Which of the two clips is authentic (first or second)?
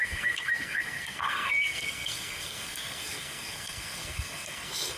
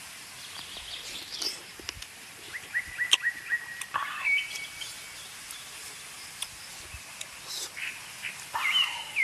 second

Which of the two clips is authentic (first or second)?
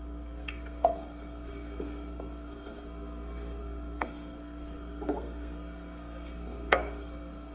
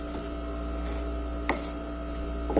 second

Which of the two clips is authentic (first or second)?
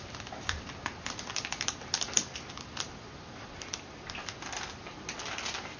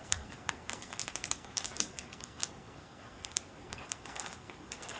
first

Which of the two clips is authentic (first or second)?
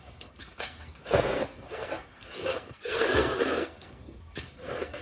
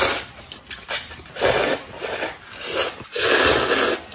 second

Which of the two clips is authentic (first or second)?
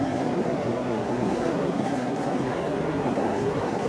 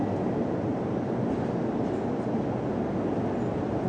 second